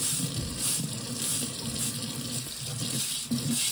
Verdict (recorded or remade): recorded